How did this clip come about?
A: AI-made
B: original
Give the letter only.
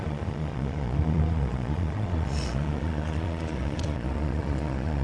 A